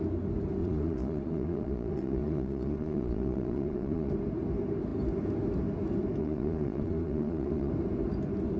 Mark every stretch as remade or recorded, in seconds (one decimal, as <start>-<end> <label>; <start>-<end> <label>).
0.0-0.6 recorded; 0.6-4.1 remade; 4.1-6.2 recorded; 6.2-7.7 remade; 7.7-8.6 recorded

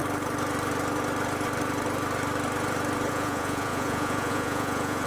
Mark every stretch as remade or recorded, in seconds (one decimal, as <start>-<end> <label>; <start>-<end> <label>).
0.0-3.1 recorded; 3.1-5.1 remade